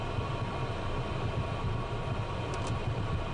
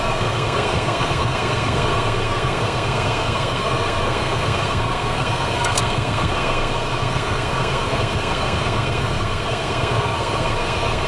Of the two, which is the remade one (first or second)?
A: second